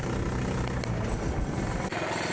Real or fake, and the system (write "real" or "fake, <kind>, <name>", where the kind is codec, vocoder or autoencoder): real